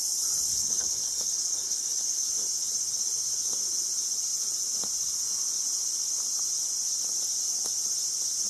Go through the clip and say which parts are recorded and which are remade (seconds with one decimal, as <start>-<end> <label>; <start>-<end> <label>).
0.0-0.5 recorded; 0.5-2.2 remade; 2.2-8.5 recorded